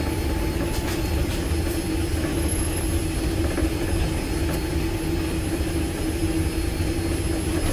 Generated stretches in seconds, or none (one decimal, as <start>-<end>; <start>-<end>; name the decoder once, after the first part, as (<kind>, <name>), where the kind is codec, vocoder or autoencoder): 2.3-2.8 (autoencoder, DAC-VAE)

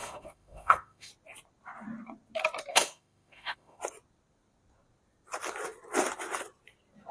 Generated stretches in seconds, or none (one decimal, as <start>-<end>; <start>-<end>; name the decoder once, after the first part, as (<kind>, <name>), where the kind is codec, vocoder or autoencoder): 0.0-1.1 (autoencoder, DAC-VAE); 2.7-3.8

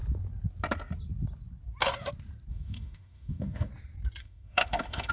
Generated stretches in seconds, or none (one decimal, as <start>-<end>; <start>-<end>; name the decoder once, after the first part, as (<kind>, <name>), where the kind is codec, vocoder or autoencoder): 2.5-3.7 (autoencoder, DAC-VAE); 4.2-5.1

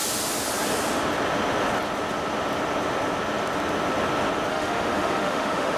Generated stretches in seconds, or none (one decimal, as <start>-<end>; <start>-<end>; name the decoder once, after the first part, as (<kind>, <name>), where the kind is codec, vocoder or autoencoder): 4.5-5.8 (autoencoder, DAC-VAE)

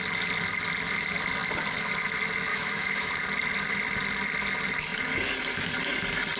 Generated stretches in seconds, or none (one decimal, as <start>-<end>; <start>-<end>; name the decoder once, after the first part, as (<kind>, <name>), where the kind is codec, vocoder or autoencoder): 2.5-3.1 (autoencoder, DAC-VAE)

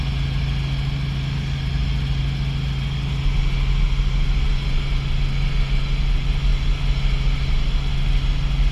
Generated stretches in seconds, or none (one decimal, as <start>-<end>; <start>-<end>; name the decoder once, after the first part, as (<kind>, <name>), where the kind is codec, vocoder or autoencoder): none

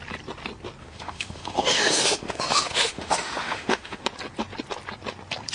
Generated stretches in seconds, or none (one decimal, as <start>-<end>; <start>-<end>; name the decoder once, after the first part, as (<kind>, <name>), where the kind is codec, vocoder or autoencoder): 0.8-4.0 (autoencoder, DAC-VAE)

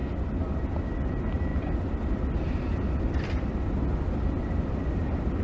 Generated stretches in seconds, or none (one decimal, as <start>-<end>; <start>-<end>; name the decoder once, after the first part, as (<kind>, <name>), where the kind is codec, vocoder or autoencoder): none